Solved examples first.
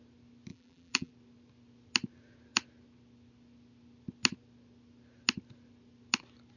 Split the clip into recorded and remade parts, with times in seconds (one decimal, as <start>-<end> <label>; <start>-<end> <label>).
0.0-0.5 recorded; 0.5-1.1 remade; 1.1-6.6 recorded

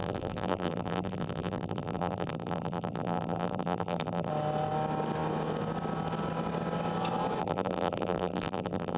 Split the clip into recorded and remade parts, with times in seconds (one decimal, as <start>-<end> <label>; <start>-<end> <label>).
0.0-4.3 remade; 4.3-7.4 recorded; 7.4-9.0 remade

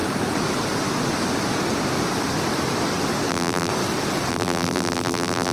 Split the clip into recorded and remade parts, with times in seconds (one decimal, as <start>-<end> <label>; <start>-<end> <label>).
0.0-3.3 recorded; 3.3-3.7 remade; 3.7-4.3 recorded; 4.3-5.5 remade